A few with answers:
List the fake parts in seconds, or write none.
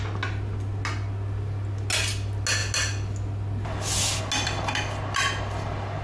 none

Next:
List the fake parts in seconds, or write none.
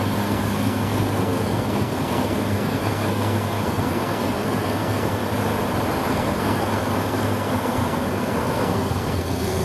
0.0-5.2 (codec, SNAC); 6.1-9.6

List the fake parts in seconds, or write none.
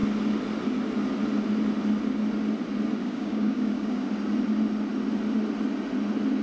3.0-4.1 (codec, DAC)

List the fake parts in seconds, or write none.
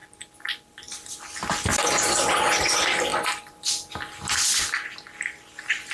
none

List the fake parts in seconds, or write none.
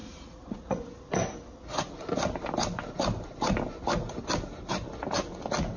0.0-1.0 (vocoder, Vocos)